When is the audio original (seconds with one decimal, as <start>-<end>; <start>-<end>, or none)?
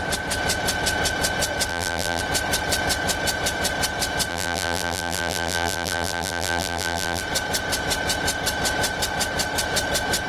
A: 0.0-1.7; 2.2-4.3; 7.2-10.3